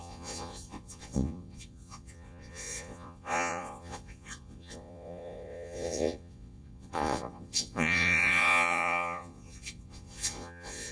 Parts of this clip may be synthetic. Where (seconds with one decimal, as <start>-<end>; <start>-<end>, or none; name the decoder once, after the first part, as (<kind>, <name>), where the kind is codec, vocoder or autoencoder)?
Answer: 0.0-10.9 (vocoder, Vocos)